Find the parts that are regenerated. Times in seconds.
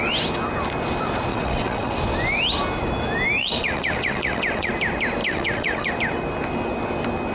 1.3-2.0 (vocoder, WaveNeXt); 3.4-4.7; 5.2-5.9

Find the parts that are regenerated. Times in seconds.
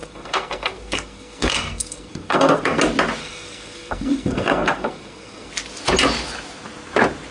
0.0-2.8 (codec, SNAC); 3.2-5.5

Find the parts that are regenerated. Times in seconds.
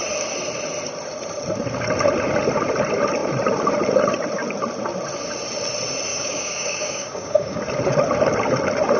6.1-7.6 (codec, DAC)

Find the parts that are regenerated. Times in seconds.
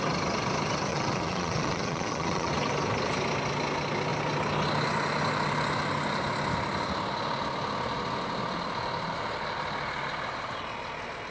0.9-2.5 (vocoder, Vocos)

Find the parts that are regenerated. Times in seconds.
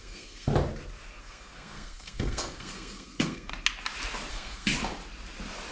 0.0-0.5 (codec, SNAC); 1.2-3.5; 4.3-4.7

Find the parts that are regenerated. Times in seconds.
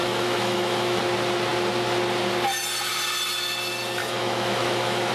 0.0-1.0 (autoencoder, DAC-VAE); 4.0-5.1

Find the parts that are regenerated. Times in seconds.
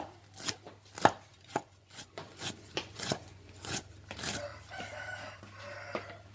1.3-3.9 (vocoder, Vocos)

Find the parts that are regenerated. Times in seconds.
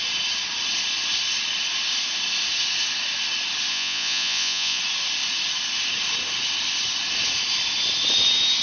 3.7-4.8 (vocoder, Vocos)